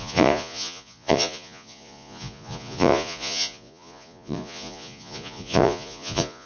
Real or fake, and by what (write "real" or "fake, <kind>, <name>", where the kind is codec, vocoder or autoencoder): fake, vocoder, Vocos